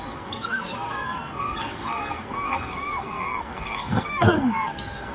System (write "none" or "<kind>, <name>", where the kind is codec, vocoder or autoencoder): codec, SNAC